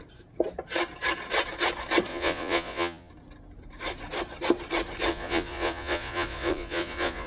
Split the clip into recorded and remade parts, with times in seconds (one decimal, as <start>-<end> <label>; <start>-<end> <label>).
0.0-2.1 recorded; 2.1-3.1 remade; 3.1-5.1 recorded; 5.1-7.3 remade